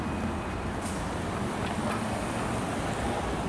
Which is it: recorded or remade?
recorded